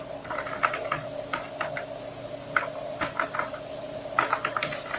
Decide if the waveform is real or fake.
real